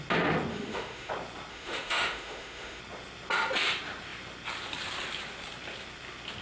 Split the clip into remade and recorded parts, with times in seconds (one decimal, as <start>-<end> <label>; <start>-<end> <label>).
0.0-0.5 recorded; 0.5-1.1 remade; 1.1-1.5 recorded; 1.5-2.8 remade; 2.8-6.4 recorded